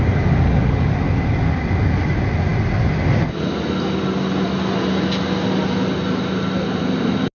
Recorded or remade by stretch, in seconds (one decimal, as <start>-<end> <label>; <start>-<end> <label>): 0.0-7.3 recorded